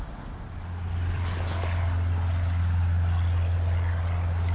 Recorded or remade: recorded